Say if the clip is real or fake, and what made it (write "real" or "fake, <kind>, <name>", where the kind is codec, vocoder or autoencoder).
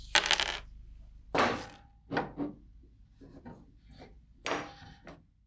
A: real